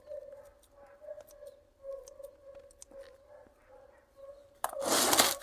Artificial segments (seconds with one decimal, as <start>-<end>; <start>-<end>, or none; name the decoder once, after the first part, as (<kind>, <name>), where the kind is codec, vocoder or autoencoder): none